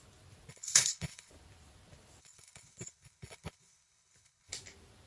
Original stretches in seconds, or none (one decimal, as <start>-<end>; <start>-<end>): 0.0-0.5; 1.3-2.2; 4.5-5.1